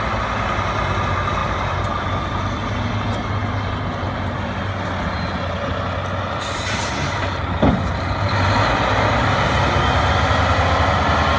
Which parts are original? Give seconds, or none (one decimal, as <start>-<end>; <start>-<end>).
0.0-1.4; 2.2-11.4